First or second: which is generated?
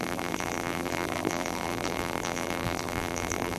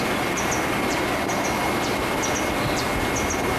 first